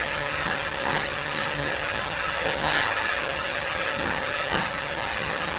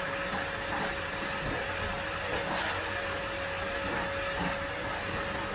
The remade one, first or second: first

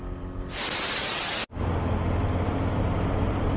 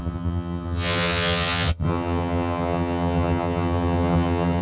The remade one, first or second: second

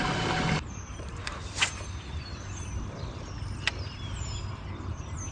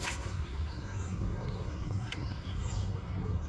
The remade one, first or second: second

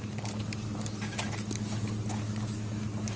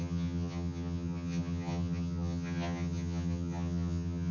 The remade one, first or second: second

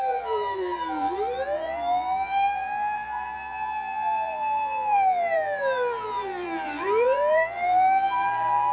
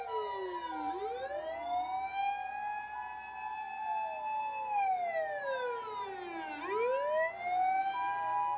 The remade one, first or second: first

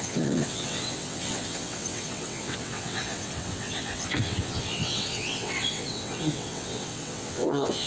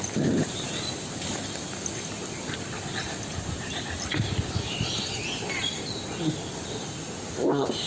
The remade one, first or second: first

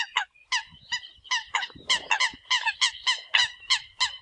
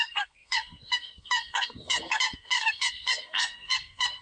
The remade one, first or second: second